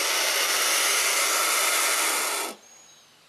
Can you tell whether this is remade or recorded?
recorded